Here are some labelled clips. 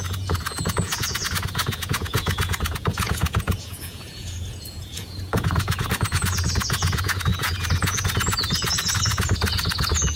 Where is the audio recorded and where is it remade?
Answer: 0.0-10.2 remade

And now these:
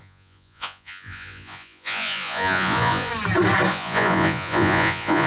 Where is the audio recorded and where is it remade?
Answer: 0.0-3.1 remade; 3.1-3.7 recorded; 3.7-5.3 remade

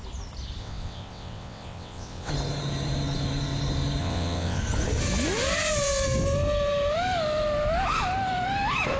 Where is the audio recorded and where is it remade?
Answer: 0.0-0.6 recorded; 0.6-2.3 remade; 2.3-4.0 recorded; 4.0-4.6 remade; 4.6-9.0 recorded